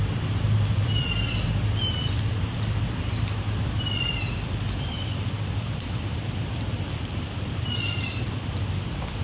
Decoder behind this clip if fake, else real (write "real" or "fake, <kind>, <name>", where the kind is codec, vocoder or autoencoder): fake, vocoder, BigVGAN v2